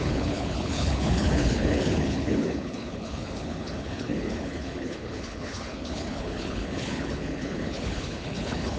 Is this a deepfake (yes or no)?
yes